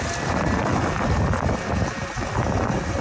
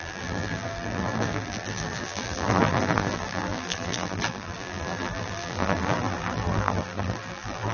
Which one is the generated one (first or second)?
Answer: second